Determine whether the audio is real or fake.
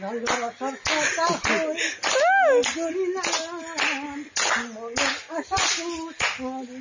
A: real